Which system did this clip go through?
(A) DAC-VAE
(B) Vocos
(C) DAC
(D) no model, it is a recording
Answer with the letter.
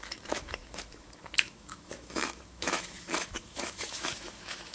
A